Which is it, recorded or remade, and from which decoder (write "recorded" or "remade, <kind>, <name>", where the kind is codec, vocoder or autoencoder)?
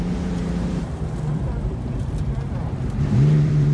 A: remade, vocoder, BigVGAN v2